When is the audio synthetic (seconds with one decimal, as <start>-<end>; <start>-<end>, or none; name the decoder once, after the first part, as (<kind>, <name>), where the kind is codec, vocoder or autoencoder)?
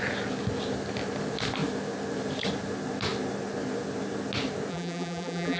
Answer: 4.7-5.6 (vocoder, BigVGAN v2)